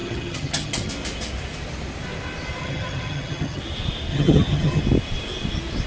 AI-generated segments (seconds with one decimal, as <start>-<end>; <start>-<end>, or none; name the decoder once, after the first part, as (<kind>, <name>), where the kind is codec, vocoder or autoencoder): 0.0-0.9 (vocoder, HiFi-GAN); 2.6-3.6; 4.1-4.8